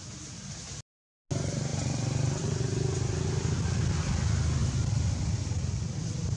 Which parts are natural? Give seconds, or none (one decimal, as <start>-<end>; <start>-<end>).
0.0-1.7; 3.0-4.6